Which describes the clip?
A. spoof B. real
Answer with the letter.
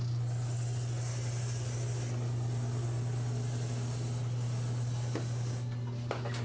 B